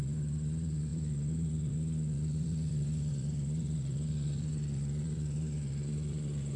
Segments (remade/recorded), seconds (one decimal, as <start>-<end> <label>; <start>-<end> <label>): 0.0-6.6 remade